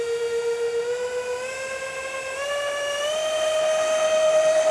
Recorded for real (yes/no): yes